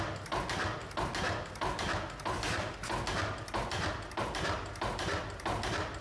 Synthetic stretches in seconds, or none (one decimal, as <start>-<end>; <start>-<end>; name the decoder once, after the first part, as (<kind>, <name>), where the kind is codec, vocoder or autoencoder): none